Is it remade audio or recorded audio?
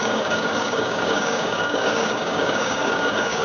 remade